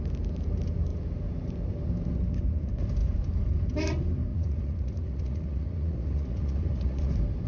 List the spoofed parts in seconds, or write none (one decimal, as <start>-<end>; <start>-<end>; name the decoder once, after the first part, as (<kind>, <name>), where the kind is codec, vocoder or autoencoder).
4.3-7.1 (vocoder, Vocos)